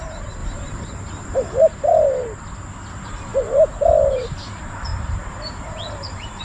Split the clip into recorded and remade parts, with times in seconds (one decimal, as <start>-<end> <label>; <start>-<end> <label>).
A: 0.0-2.2 remade; 2.2-2.9 recorded; 2.9-3.3 remade; 3.3-4.1 recorded; 4.1-6.4 remade